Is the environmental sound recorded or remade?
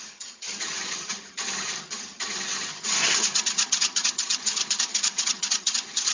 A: remade